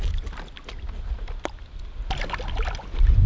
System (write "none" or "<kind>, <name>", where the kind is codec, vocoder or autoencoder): none